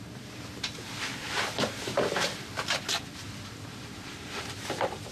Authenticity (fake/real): fake